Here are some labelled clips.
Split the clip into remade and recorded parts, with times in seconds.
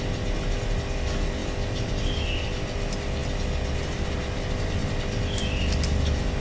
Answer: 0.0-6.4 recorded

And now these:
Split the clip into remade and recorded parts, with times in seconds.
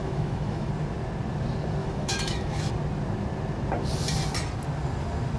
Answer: 0.0-0.7 remade; 0.7-1.8 recorded; 1.8-2.7 remade; 2.7-5.4 recorded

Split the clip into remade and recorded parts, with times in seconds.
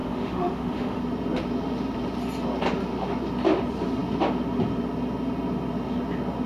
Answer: 0.0-1.0 remade; 1.0-6.5 recorded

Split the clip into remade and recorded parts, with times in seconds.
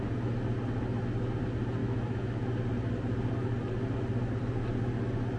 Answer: 0.0-1.8 recorded; 1.8-2.5 remade; 2.5-5.4 recorded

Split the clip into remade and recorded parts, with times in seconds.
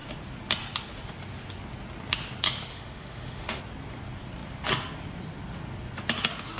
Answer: 0.0-2.7 recorded; 2.7-3.6 remade; 3.6-6.6 recorded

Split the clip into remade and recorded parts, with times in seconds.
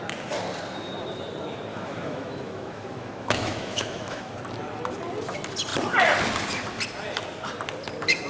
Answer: 0.0-1.7 recorded; 1.7-4.3 remade; 4.3-8.3 recorded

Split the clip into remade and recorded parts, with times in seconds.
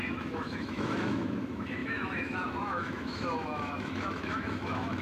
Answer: 0.0-5.0 remade